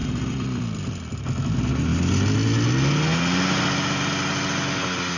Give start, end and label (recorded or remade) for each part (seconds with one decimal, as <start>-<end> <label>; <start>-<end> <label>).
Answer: 0.0-5.2 recorded